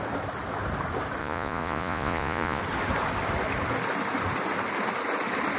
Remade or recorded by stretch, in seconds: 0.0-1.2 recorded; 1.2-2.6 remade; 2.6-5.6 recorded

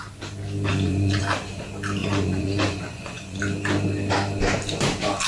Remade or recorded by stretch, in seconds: 0.0-0.7 recorded; 0.7-1.2 remade; 1.2-2.0 recorded; 2.0-3.4 remade; 3.4-5.3 recorded

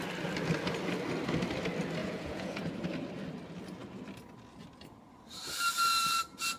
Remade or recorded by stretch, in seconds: 0.0-2.0 recorded; 2.0-2.6 remade; 2.6-6.6 recorded